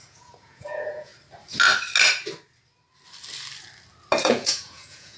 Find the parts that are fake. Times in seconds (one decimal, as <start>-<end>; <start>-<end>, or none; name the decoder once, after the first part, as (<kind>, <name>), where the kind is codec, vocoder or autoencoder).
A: 0.0-1.1 (vocoder, Vocos); 4.2-5.2